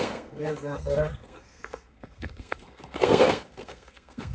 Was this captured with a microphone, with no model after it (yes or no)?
no